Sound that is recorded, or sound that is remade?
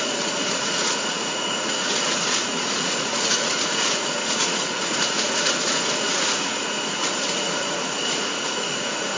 remade